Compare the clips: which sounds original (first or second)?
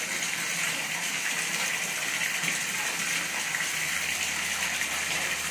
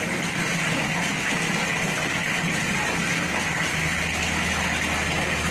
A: second